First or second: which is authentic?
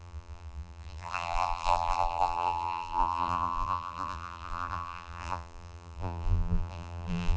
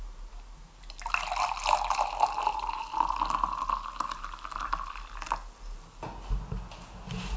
second